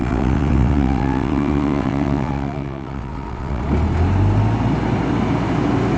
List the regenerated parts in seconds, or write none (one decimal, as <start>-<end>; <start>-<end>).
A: 0.0-3.6